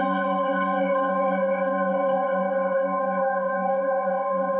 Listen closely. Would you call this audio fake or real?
fake